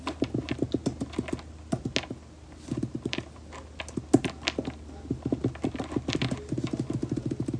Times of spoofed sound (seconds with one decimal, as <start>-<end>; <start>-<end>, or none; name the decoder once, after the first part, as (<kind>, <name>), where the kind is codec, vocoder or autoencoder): none